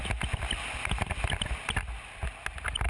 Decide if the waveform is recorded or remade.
recorded